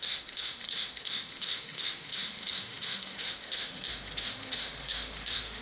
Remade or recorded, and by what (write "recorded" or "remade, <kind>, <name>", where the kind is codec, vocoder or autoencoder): remade, autoencoder, DAC-VAE